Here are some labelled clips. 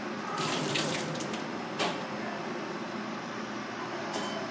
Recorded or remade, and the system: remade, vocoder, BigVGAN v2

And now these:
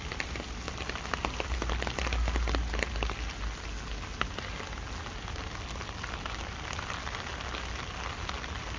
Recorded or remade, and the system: recorded